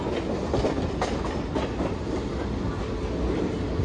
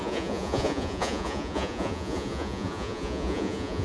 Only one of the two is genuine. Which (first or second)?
first